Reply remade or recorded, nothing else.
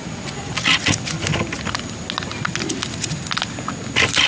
recorded